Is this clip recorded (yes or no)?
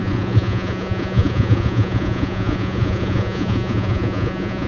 no